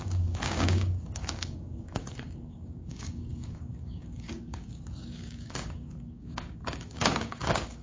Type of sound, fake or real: fake